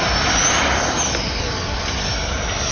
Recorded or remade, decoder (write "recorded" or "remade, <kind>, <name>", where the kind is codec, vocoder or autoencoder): recorded